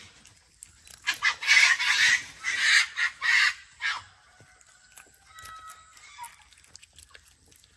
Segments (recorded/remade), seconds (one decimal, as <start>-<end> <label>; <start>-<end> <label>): 0.0-7.8 recorded